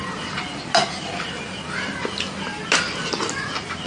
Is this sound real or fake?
real